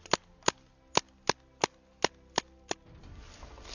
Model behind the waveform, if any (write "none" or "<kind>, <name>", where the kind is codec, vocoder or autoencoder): none